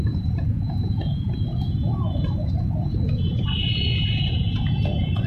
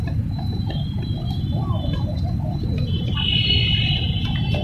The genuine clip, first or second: second